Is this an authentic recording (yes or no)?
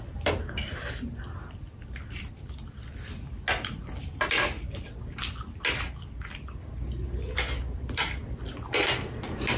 yes